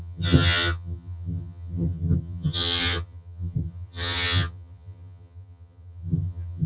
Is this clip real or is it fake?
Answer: fake